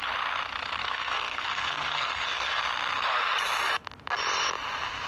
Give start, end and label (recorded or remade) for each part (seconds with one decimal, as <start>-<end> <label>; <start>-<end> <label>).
0.0-0.8 recorded; 0.8-2.6 remade; 2.6-5.1 recorded